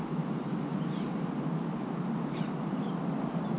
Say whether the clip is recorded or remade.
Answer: recorded